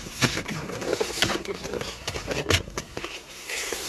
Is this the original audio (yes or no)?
no